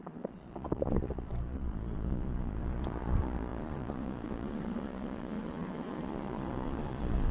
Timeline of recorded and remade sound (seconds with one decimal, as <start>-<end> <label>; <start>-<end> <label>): 0.0-7.3 remade